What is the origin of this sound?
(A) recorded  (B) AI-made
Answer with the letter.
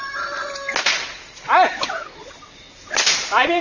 A